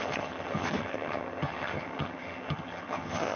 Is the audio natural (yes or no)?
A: no